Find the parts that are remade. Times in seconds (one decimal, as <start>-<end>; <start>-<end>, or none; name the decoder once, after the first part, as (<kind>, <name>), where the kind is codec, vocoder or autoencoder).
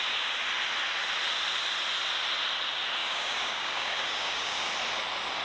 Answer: 3.0-4.7 (codec, DAC)